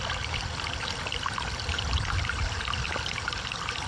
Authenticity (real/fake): real